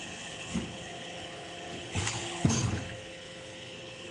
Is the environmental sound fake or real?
fake